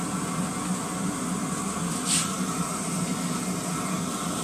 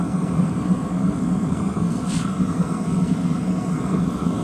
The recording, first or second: first